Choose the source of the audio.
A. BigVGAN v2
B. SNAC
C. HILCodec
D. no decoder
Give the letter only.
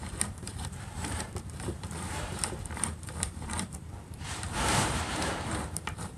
A